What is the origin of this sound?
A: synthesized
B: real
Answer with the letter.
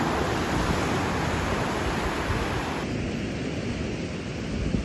B